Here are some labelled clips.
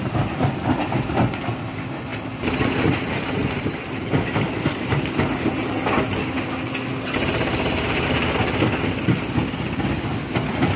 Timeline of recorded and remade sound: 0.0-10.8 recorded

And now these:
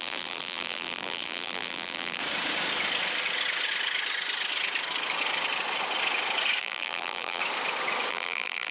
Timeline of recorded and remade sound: 0.0-2.2 remade; 2.2-6.6 recorded; 6.6-7.4 remade; 7.4-8.1 recorded; 8.1-8.7 remade

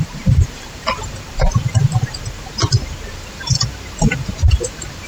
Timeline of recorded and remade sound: 0.0-5.1 remade

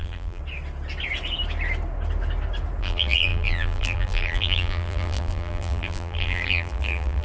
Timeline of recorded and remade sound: 0.0-0.4 remade; 0.4-2.8 recorded; 2.8-7.2 remade

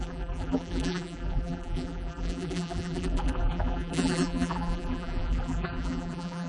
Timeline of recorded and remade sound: 0.0-6.5 remade

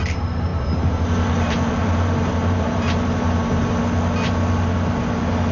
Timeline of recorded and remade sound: 0.0-0.5 recorded; 0.5-3.8 remade; 3.8-5.5 recorded